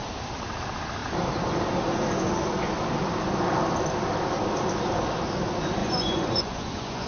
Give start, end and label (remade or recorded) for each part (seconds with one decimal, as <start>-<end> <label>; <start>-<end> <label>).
0.0-5.8 recorded; 5.8-7.1 remade